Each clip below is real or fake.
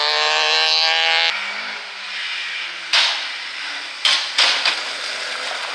real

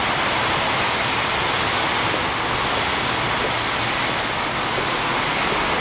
real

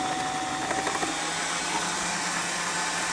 real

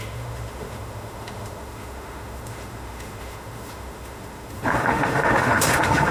fake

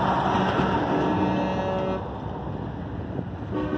real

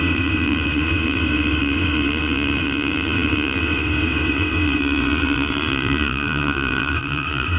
fake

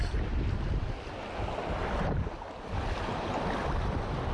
real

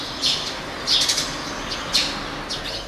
real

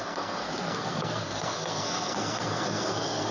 fake